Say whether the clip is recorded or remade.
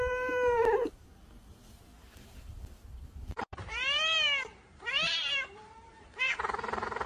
remade